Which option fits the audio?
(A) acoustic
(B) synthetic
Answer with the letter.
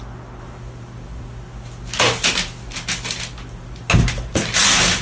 A